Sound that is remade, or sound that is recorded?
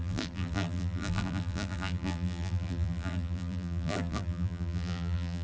remade